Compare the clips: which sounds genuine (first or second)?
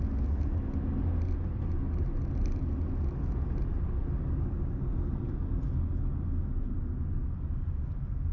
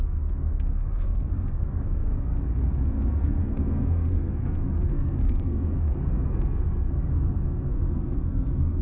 first